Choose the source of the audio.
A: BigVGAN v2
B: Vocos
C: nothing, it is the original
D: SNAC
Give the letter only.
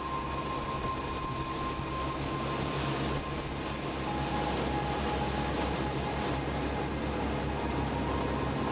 C